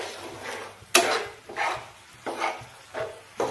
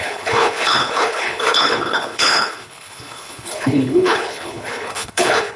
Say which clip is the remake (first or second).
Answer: second